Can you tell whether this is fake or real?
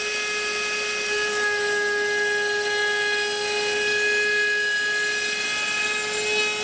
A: real